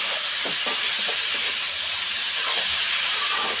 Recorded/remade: remade